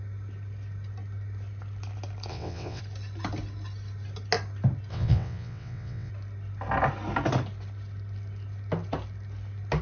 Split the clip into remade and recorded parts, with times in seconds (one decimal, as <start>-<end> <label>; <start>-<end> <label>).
0.0-2.3 recorded; 2.3-2.8 remade; 2.8-4.9 recorded; 4.9-6.1 remade; 6.1-9.8 recorded